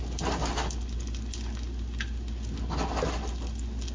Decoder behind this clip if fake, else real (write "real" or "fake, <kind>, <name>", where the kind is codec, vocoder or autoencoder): real